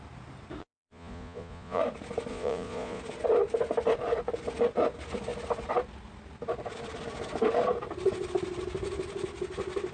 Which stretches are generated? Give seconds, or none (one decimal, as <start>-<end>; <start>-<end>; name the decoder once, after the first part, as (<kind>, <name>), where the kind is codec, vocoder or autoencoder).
0.6-1.8 (vocoder, Vocos); 2.3-3.0